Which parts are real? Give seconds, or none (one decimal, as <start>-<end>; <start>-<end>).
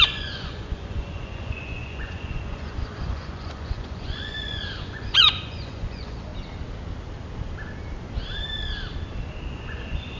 6.3-9.5